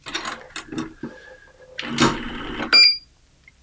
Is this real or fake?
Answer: real